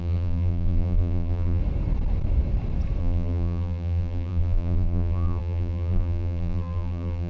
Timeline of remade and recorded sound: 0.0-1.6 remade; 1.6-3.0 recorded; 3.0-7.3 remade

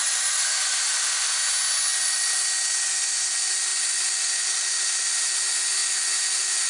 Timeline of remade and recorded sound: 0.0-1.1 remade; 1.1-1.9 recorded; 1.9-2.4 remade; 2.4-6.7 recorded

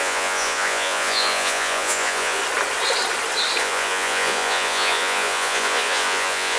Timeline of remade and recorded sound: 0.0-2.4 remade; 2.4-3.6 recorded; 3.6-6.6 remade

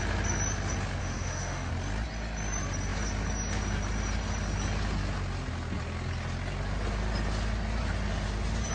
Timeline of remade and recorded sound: 0.0-1.0 recorded; 1.0-1.7 remade; 1.7-8.7 recorded